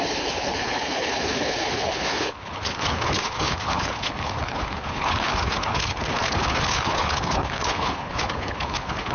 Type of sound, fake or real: fake